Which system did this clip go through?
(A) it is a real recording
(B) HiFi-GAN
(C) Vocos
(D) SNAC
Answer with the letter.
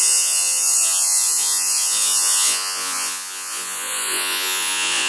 C